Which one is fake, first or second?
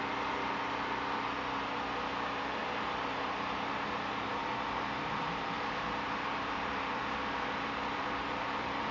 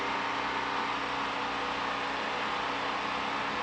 first